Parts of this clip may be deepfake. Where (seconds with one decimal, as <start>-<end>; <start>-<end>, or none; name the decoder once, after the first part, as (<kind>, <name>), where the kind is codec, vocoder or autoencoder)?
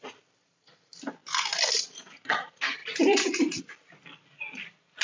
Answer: 1.2-1.7 (vocoder, BigVGAN v2); 2.8-3.6